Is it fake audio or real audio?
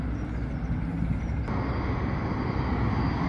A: real